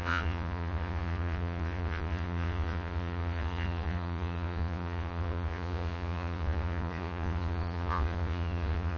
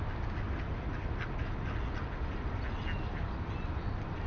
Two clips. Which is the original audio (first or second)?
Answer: second